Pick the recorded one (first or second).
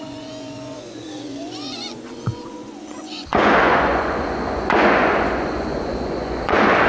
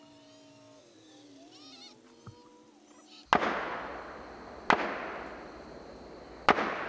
second